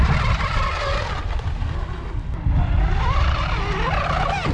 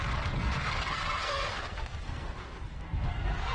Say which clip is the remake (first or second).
second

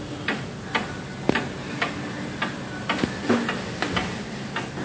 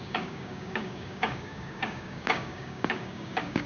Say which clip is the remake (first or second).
second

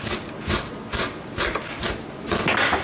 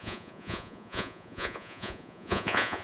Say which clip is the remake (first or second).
second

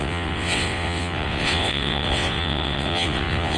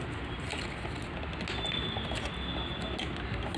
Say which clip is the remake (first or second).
first